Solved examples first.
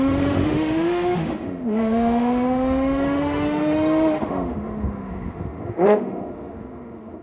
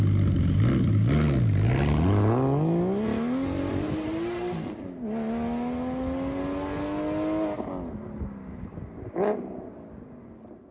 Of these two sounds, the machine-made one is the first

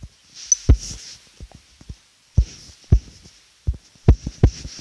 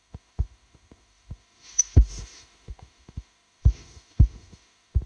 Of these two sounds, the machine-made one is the second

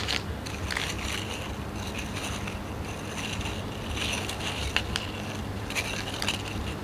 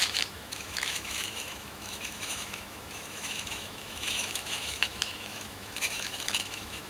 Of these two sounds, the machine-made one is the second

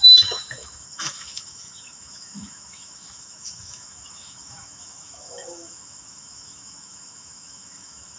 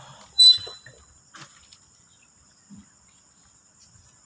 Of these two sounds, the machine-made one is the first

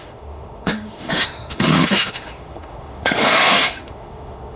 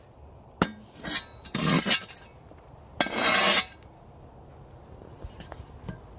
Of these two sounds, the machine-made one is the first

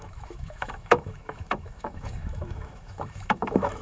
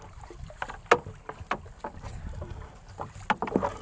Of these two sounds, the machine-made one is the first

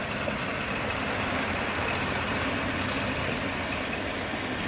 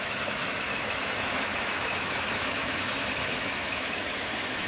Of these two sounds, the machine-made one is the second